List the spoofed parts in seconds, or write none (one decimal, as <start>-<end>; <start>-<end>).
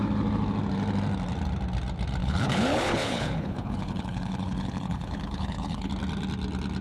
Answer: 2.2-5.9